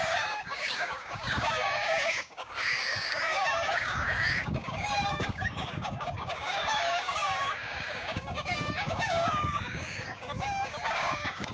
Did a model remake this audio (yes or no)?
yes